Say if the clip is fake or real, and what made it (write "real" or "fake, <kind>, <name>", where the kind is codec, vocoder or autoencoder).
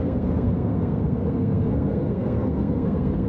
fake, codec, SNAC